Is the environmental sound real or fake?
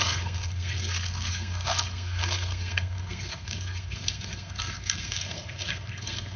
fake